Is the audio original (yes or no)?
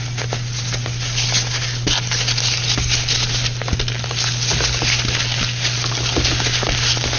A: yes